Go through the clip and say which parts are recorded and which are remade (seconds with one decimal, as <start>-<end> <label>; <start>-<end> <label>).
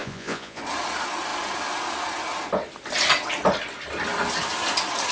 0.0-0.6 remade; 0.6-5.1 recorded